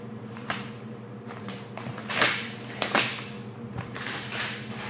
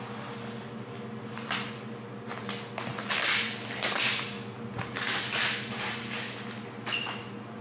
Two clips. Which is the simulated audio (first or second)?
first